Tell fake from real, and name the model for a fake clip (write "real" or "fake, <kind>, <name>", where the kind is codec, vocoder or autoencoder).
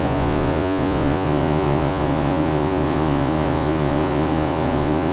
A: fake, vocoder, Vocos